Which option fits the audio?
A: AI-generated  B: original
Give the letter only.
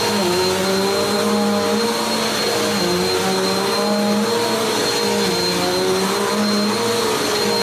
B